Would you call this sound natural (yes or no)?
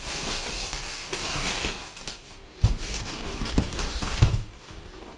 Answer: no